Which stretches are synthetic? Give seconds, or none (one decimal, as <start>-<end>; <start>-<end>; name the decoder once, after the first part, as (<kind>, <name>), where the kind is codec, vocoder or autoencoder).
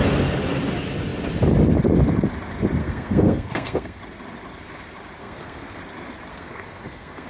2.8-4.0 (codec, SNAC); 5.2-5.8; 6.3-7.3